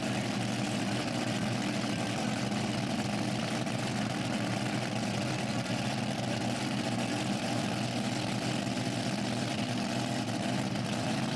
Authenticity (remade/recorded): recorded